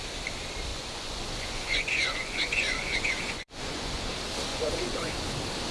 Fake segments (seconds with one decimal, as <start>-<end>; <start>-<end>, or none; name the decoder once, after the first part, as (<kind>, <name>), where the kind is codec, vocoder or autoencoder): 0.7-4.1 (vocoder, Vocos); 4.5-5.1